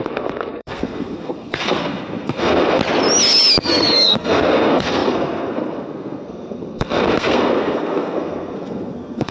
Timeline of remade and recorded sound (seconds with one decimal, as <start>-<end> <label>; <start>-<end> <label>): 0.0-2.8 remade; 2.8-3.6 recorded; 3.6-9.3 remade